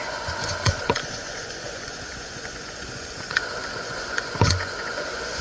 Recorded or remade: remade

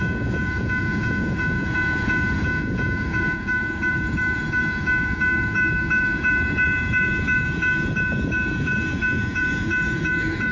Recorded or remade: remade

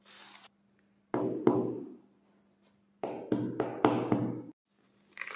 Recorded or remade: recorded